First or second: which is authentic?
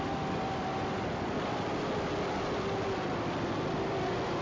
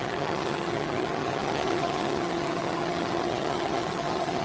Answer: first